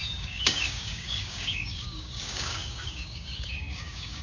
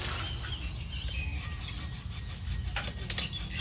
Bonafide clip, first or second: second